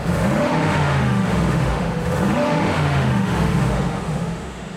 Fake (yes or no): yes